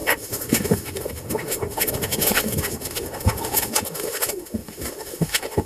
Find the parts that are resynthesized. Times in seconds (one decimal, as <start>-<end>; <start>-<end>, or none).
0.0-5.7